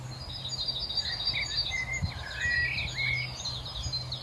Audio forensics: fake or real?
real